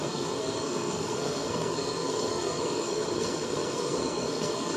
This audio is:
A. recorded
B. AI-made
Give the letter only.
B